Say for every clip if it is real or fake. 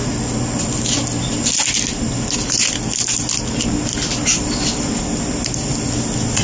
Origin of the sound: real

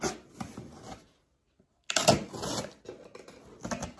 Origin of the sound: real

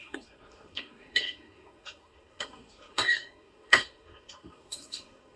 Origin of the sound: fake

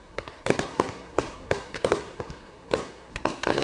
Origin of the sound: fake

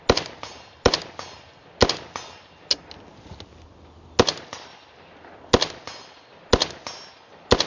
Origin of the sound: real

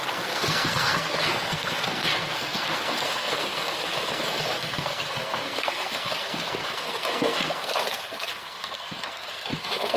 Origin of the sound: fake